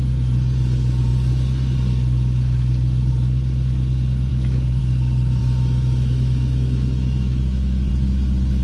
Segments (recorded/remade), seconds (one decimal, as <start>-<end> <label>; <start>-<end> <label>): 0.0-4.3 recorded; 4.3-4.8 remade; 4.8-5.4 recorded; 5.4-7.9 remade; 7.9-8.6 recorded